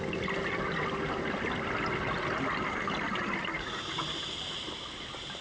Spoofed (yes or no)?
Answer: no